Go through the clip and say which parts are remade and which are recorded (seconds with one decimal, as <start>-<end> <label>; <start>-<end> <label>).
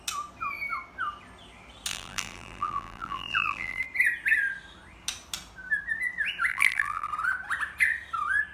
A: 0.0-1.9 recorded; 1.9-3.8 remade; 3.8-6.5 recorded; 6.5-7.1 remade; 7.1-8.5 recorded